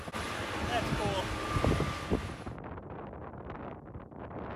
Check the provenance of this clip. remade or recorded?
recorded